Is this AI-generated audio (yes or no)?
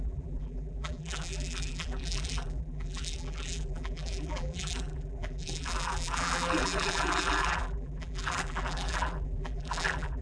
yes